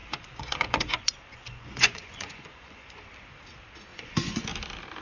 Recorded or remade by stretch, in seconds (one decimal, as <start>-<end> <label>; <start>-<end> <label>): 0.0-3.0 remade; 3.0-3.9 recorded; 3.9-4.4 remade; 4.4-5.0 recorded